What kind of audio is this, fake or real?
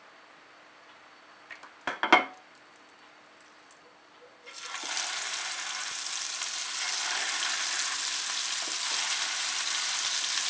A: real